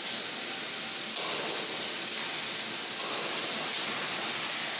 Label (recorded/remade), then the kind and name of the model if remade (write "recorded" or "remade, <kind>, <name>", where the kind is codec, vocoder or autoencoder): recorded